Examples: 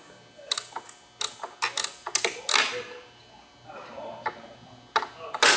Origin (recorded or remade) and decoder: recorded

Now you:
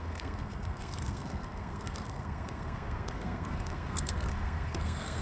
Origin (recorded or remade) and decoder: remade, codec, SNAC